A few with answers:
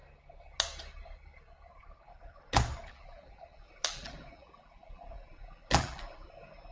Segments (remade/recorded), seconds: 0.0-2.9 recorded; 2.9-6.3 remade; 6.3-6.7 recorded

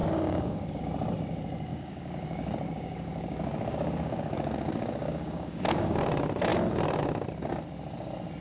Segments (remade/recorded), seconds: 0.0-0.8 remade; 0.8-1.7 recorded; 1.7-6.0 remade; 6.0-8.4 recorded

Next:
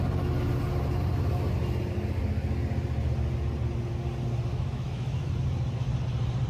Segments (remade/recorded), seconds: 0.0-4.5 recorded; 4.5-5.3 remade; 5.3-6.5 recorded